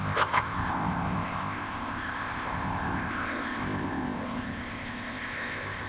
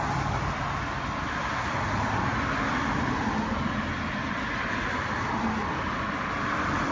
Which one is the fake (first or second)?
first